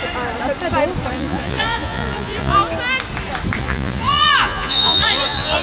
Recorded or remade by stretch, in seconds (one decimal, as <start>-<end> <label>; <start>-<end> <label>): 0.0-1.1 recorded; 1.1-2.6 remade; 2.6-3.6 recorded; 3.6-5.6 remade